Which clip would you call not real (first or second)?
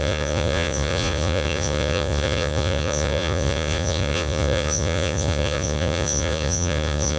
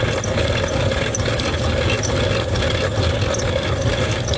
first